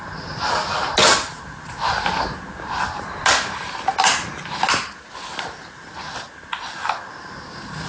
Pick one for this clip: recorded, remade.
recorded